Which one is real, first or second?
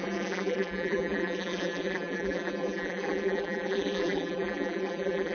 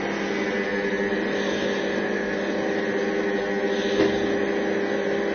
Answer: second